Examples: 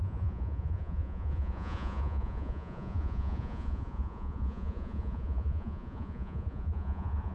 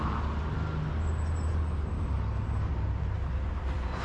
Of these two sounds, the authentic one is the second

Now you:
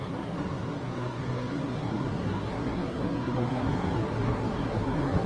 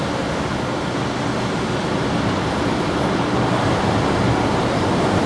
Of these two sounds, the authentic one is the second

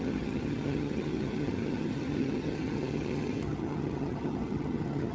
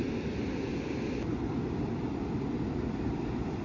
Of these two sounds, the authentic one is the second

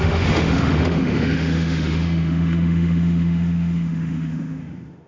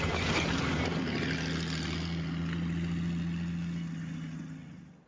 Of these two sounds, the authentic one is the second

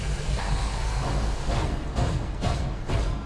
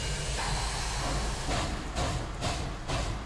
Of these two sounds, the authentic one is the second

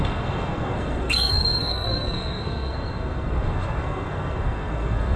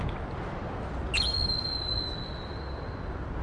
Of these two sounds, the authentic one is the second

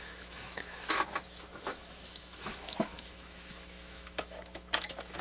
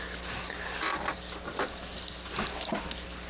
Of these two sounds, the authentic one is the second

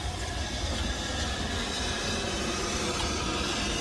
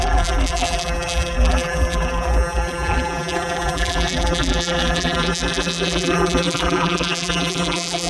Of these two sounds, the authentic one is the first